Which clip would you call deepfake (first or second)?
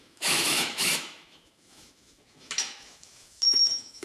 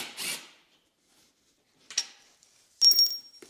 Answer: first